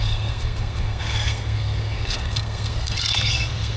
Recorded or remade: remade